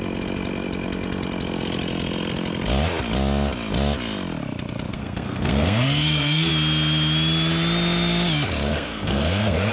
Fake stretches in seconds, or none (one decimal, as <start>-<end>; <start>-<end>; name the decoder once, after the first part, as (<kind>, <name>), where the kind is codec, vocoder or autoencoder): 4.9-6.5 (codec, SNAC); 8.7-9.7